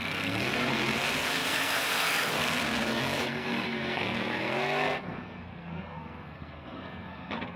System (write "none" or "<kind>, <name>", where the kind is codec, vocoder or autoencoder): codec, SNAC